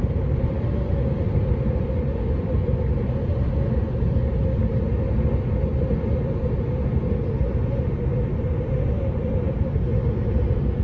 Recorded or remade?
recorded